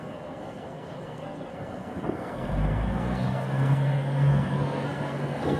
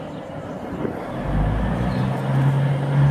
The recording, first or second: second